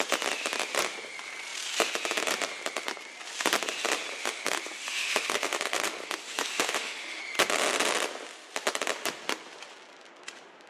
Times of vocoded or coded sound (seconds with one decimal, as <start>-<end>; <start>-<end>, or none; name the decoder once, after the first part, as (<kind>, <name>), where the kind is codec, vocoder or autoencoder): 4.2-7.2 (autoencoder, DAC-VAE)